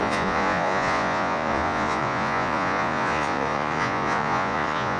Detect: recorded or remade remade